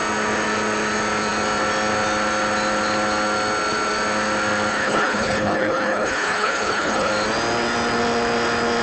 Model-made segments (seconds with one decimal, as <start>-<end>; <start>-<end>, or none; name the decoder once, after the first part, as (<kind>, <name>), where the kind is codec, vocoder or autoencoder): 4.7-7.1 (codec, HILCodec)